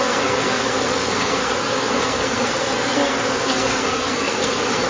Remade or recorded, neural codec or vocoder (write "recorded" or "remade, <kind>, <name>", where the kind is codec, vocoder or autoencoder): remade, codec, SNAC